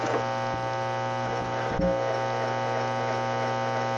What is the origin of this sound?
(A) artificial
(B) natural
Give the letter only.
B